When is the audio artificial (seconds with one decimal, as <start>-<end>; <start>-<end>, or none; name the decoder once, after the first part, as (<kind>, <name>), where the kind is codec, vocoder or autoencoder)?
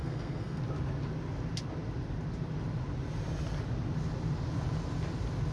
0.0-0.6 (codec, SNAC)